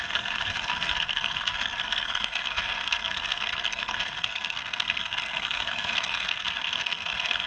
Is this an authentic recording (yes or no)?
no